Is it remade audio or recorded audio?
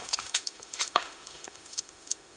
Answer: remade